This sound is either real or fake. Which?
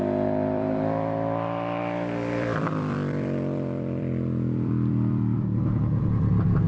fake